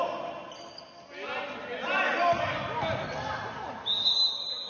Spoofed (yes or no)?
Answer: no